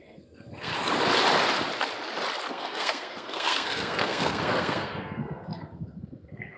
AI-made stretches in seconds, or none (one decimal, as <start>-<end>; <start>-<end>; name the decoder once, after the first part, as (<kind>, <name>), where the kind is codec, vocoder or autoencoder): 0.0-0.7 (codec, SNAC); 2.5-6.6